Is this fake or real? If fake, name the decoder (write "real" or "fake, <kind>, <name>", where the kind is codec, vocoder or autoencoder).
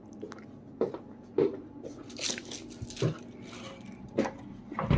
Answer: real